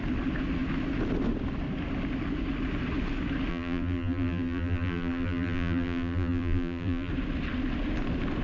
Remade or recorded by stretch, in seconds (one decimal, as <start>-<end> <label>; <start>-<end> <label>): 0.0-3.5 recorded; 3.5-7.1 remade; 7.1-8.4 recorded